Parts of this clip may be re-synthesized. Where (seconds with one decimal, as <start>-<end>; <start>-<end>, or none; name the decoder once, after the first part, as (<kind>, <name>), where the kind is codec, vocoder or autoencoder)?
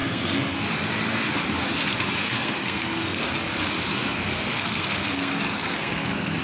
0.0-0.7 (codec, SNAC); 2.2-3.3; 3.9-6.4